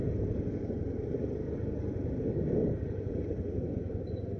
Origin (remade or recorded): recorded